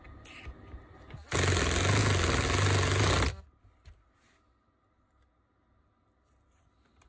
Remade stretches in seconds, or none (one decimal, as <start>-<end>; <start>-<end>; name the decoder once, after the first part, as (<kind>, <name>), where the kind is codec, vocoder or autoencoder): none